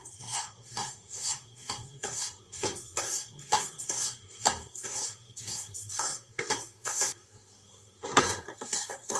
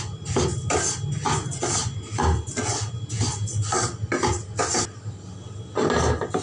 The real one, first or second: second